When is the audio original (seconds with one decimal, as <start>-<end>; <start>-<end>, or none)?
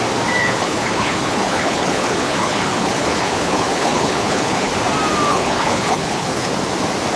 0.0-0.4; 4.7-5.3; 6.5-7.2